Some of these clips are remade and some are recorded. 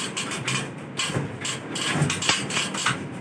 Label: recorded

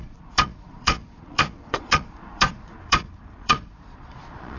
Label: remade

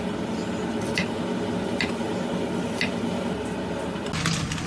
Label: recorded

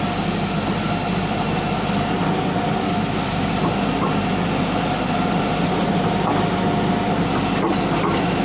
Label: recorded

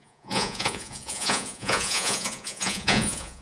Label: remade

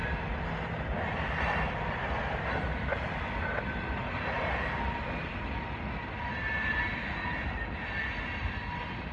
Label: recorded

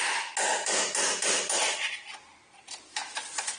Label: recorded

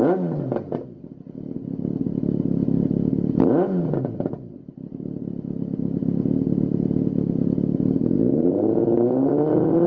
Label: recorded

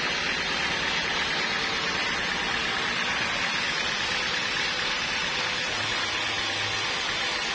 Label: recorded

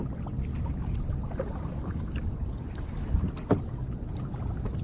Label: recorded